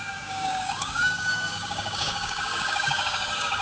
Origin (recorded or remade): remade